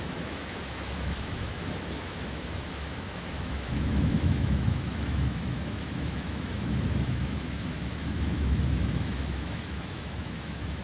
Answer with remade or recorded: remade